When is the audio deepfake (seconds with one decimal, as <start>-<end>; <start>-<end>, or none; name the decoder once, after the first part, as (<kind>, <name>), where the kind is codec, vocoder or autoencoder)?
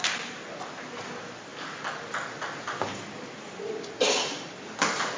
none